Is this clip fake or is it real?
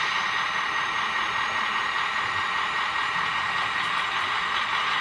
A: real